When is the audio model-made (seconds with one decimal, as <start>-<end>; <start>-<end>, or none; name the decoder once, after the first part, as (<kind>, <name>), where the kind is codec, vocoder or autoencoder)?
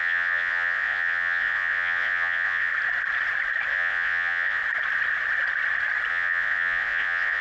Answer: 0.0-2.7 (vocoder, Vocos); 3.7-4.6; 6.1-7.4